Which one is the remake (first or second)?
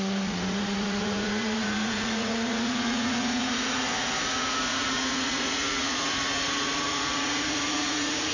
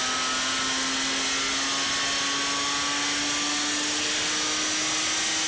first